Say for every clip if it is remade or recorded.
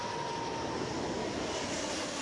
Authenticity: recorded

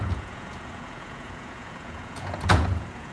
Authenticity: remade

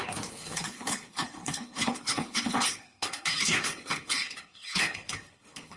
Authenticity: remade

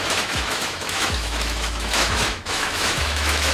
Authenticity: remade